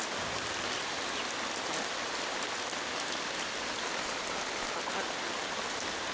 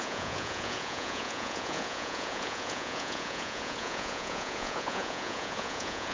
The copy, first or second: second